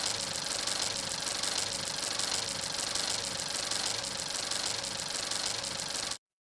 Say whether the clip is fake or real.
real